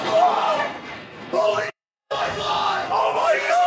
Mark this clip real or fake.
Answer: fake